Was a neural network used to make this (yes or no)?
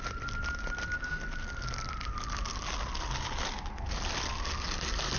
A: no